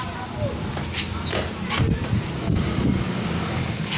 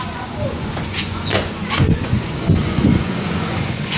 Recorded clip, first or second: first